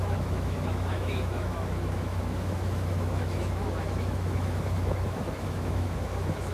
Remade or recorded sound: remade